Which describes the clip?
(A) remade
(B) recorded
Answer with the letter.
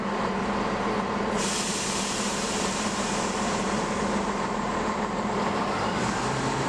A